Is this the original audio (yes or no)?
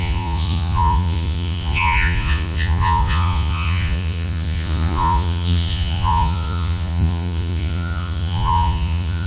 no